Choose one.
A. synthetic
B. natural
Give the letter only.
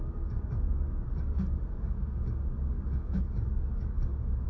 A